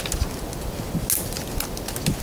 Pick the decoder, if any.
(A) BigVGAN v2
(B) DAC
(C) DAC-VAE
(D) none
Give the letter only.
D